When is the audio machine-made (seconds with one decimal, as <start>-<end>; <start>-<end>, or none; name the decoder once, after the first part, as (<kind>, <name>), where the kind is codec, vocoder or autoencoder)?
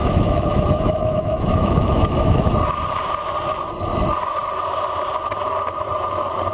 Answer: 0.0-2.5 (autoencoder, DAC-VAE)